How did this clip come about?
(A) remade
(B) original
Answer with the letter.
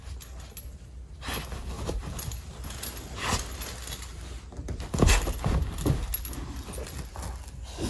B